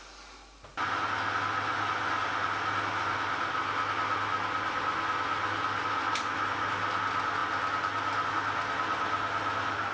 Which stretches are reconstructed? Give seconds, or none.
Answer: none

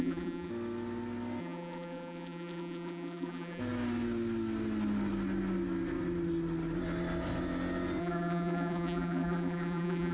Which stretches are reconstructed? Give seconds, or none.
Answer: 0.0-0.5 (vocoder, BigVGAN v2); 1.4-3.6; 8.0-10.1

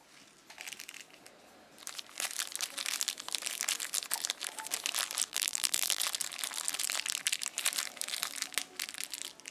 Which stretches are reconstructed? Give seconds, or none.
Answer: 5.3-6.0 (vocoder, BigVGAN v2)

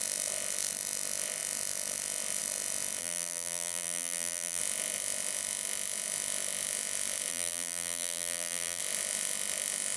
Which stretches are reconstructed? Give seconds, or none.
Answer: 3.0-4.6 (vocoder, BigVGAN v2); 7.3-8.8

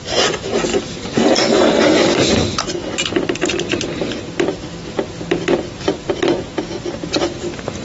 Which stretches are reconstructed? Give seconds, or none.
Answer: none

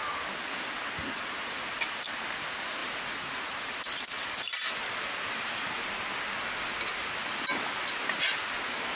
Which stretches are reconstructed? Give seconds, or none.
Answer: 2.8-5.7 (vocoder, BigVGAN v2); 7.0-7.8

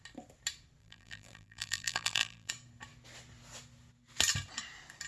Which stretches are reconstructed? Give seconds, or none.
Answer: 0.8-2.5 (vocoder, BigVGAN v2)